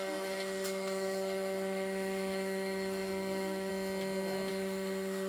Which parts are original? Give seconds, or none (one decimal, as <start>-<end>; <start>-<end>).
3.7-4.5